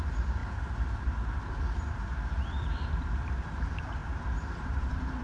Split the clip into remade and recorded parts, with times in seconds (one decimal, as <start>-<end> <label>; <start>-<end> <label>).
0.0-5.2 remade